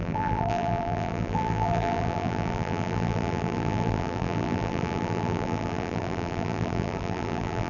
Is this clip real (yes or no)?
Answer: no